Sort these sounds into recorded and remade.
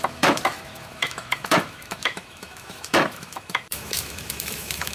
remade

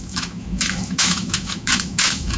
remade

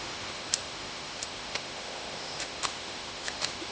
remade